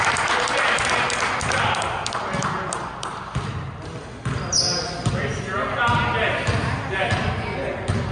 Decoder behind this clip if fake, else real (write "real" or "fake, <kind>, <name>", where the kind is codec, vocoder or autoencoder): real